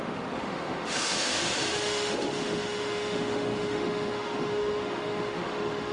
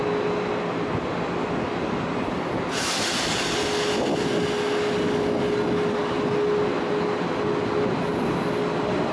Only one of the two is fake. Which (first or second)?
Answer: first